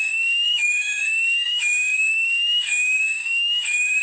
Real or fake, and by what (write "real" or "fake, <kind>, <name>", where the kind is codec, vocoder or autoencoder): fake, autoencoder, DAC-VAE